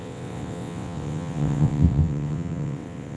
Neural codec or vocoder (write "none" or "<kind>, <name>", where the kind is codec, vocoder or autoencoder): vocoder, WaveNeXt